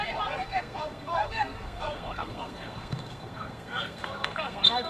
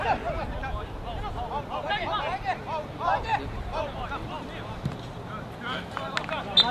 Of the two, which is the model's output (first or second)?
first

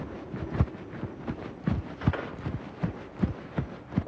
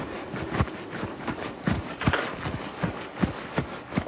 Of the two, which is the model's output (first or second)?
second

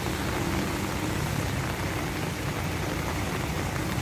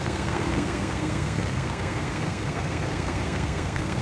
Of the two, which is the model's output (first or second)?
second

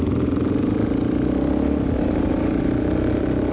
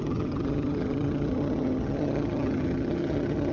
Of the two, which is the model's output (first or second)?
second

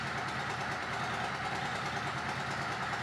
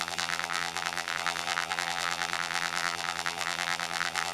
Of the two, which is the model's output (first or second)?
second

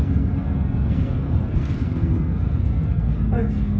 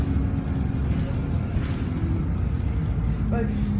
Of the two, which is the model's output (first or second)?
first